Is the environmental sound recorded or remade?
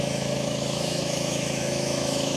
remade